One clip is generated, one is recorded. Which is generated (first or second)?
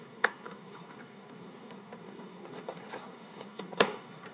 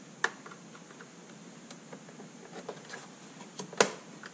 first